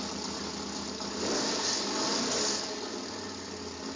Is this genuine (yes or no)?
yes